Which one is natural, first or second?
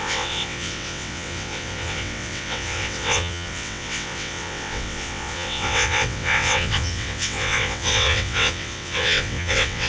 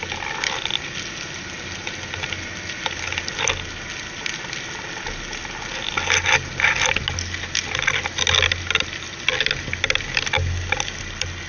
second